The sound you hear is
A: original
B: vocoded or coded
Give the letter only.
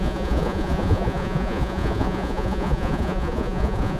B